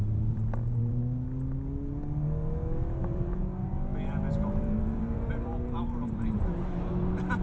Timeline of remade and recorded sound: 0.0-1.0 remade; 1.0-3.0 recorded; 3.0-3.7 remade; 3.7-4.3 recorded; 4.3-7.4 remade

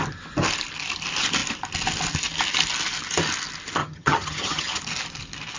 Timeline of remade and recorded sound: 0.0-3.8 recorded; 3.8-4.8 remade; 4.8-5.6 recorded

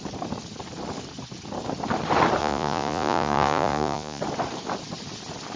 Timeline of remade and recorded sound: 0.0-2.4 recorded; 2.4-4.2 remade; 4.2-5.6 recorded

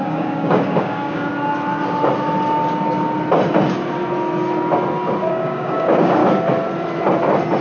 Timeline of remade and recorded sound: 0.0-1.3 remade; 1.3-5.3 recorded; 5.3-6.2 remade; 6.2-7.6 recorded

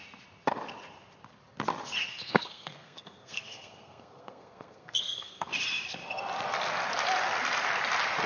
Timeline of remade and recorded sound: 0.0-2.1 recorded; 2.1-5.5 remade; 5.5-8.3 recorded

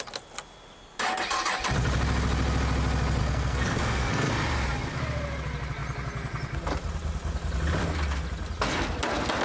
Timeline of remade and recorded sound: 0.0-3.2 recorded; 3.2-4.3 remade; 4.3-9.4 recorded